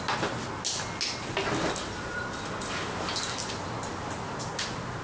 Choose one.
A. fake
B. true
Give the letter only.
B